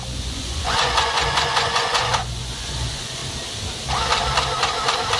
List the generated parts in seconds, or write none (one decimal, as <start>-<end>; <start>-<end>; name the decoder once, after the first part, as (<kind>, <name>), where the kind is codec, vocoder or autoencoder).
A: 0.0-3.2 (vocoder, Vocos)